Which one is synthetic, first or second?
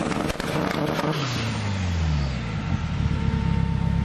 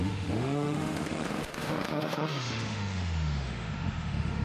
second